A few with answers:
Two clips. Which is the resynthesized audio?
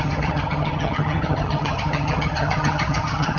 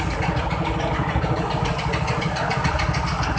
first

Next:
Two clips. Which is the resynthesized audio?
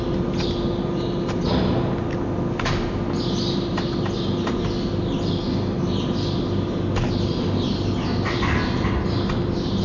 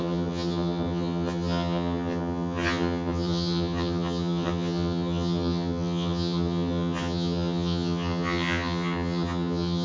second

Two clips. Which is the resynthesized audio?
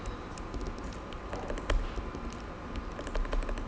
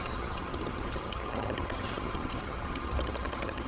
second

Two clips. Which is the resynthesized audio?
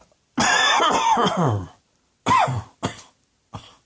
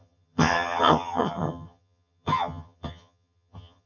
second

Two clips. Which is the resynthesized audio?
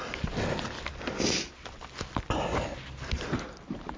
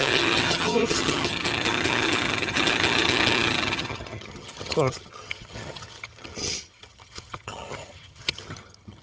second